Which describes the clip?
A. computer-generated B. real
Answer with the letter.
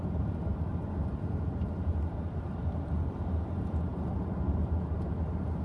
A